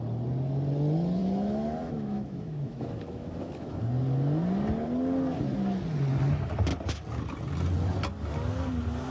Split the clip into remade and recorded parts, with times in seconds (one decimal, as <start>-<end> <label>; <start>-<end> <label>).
0.0-1.2 recorded; 1.2-3.8 remade; 3.8-9.1 recorded